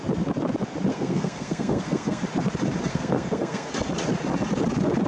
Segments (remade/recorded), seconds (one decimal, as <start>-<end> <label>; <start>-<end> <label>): 0.0-0.9 recorded; 0.9-2.2 remade; 2.2-2.9 recorded; 2.9-3.7 remade; 3.7-5.1 recorded